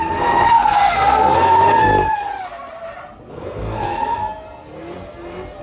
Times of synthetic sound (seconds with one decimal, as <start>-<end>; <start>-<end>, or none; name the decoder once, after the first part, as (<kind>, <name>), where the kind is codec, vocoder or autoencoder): 0.0-1.9 (codec, SNAC); 3.3-4.2